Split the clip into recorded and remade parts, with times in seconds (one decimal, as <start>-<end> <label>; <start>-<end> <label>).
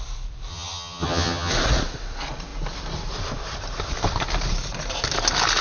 0.0-0.5 recorded; 0.5-1.5 remade; 1.5-5.6 recorded